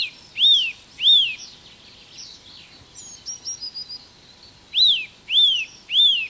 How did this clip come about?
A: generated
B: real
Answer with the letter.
B